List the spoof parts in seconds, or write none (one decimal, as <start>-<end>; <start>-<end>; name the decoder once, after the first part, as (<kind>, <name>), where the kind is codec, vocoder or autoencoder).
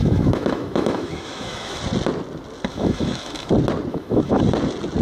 0.0-1.8 (autoencoder, DAC-VAE); 2.7-3.5; 3.9-4.4